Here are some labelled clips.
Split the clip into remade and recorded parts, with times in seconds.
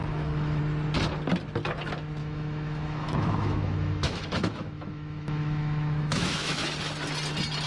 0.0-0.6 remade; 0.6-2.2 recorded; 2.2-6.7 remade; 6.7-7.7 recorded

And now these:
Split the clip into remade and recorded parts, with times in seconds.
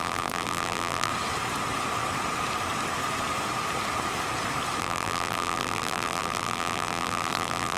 0.0-1.1 remade; 1.1-4.8 recorded; 4.8-7.8 remade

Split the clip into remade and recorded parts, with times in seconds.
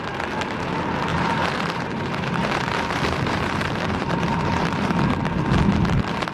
0.0-1.1 recorded; 1.1-4.9 remade; 4.9-6.3 recorded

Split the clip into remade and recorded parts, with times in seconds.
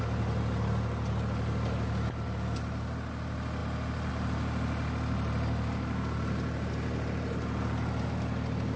0.0-8.8 recorded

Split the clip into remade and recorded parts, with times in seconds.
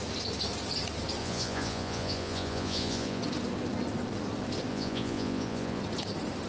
0.0-1.2 recorded; 1.2-3.2 remade; 3.2-4.7 recorded; 4.7-5.8 remade; 5.8-6.5 recorded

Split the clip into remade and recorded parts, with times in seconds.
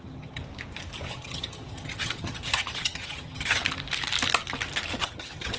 0.0-0.4 remade; 0.4-1.1 recorded; 1.1-3.6 remade; 3.6-5.0 recorded; 5.0-5.6 remade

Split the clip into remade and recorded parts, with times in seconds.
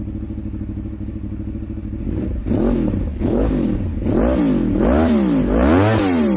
0.0-3.1 recorded; 3.1-3.8 remade; 3.8-6.4 recorded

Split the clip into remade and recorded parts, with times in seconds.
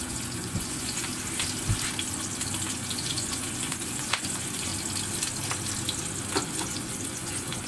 0.0-1.1 remade; 1.1-2.7 recorded; 2.7-4.7 remade; 4.7-6.4 recorded; 6.4-7.7 remade